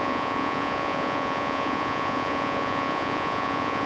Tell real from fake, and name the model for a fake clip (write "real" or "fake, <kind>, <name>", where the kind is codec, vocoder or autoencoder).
fake, vocoder, Vocos